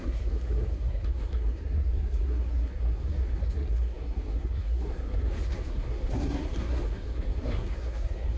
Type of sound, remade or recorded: remade